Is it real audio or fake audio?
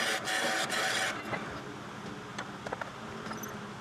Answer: real